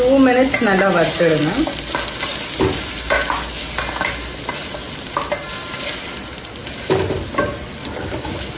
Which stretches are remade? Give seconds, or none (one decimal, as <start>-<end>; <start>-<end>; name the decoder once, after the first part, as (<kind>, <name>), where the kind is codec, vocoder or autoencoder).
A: none